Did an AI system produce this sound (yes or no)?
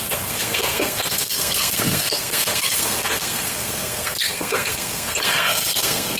yes